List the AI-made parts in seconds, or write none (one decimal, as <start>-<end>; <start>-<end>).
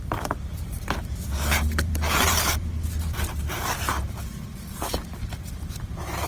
0.5-2.7